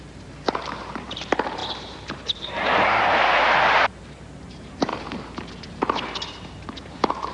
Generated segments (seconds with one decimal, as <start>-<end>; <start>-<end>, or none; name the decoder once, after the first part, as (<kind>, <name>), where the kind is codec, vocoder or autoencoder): 0.0-4.9 (vocoder, BigVGAN v2); 5.5-7.3